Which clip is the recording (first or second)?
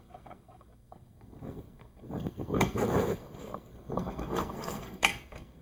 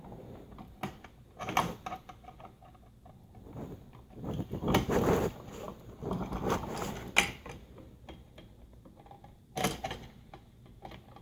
second